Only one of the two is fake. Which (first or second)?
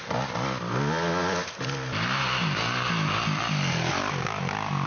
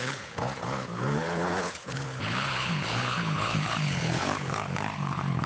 second